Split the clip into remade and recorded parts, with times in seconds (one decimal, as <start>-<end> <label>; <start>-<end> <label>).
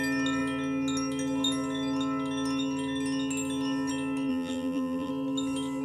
0.0-4.3 recorded; 4.3-5.1 remade; 5.1-5.8 recorded